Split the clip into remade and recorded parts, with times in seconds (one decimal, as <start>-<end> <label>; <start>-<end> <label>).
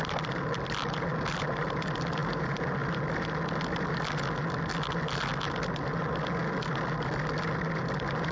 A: 0.0-8.3 recorded